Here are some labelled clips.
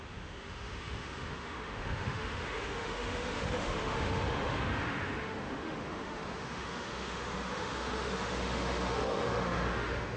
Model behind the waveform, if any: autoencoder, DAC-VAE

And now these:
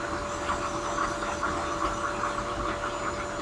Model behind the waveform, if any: none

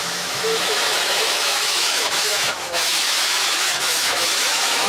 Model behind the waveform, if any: autoencoder, DAC-VAE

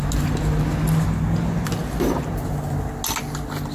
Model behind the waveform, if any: none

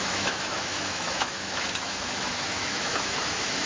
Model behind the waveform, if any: autoencoder, DAC-VAE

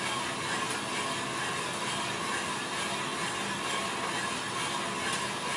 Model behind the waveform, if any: none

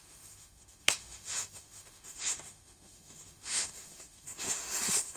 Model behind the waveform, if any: autoencoder, DAC-VAE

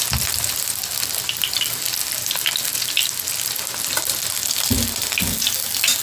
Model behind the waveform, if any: none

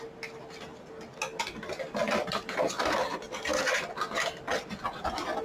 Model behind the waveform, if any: none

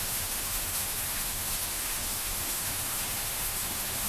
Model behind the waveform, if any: autoencoder, DAC-VAE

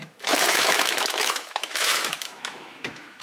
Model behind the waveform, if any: autoencoder, DAC-VAE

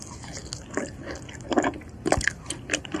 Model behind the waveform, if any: none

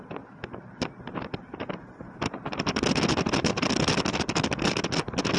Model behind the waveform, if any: none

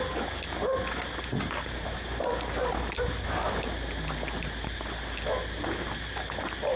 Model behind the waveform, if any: none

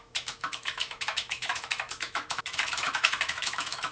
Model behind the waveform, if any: autoencoder, DAC-VAE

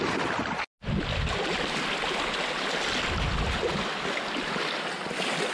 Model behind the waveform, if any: none